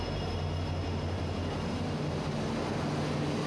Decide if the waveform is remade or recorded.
recorded